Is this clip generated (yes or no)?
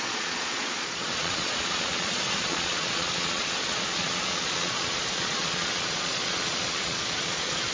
yes